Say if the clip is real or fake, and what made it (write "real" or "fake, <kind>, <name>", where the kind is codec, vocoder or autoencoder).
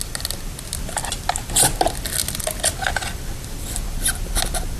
real